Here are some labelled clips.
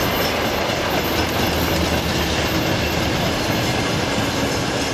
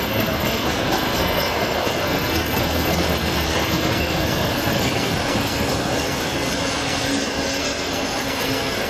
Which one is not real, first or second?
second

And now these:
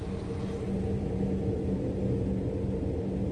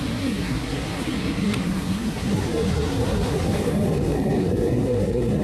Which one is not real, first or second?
second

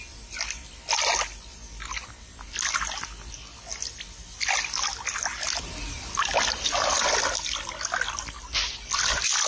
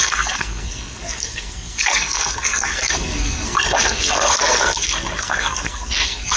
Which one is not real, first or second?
second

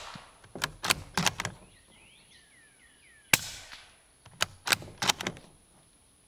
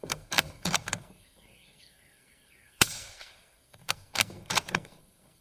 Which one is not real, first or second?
second